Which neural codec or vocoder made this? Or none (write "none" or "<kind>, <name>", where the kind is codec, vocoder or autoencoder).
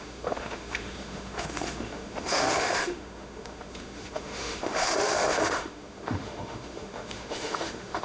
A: autoencoder, DAC-VAE